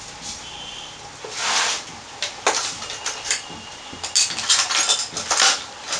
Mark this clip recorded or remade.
recorded